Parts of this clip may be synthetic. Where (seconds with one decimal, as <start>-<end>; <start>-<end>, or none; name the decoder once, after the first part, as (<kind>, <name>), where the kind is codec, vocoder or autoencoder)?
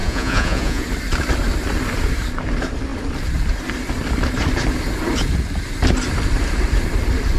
0.0-0.8 (vocoder, Vocos)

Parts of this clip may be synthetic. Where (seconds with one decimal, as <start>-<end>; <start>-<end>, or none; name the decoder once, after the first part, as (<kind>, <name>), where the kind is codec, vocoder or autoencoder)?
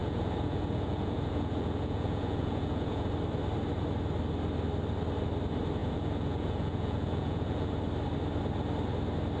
0.0-3.1 (vocoder, Vocos); 5.8-7.7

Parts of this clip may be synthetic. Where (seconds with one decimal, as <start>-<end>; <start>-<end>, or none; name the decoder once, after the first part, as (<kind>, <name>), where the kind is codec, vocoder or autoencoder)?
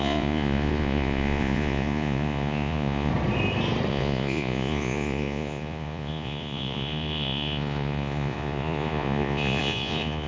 0.0-3.1 (vocoder, Vocos); 3.9-10.3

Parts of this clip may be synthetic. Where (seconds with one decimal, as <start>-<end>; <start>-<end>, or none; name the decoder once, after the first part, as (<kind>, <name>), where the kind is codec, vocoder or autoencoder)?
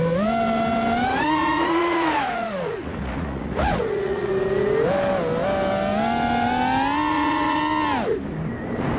1.1-4.3 (vocoder, Vocos); 7.1-7.6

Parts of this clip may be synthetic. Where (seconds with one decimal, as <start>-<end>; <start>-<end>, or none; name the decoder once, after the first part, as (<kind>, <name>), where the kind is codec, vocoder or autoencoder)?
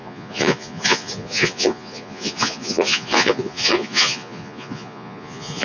0.0-5.6 (vocoder, Vocos)